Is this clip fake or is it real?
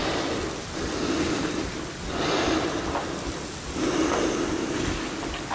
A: real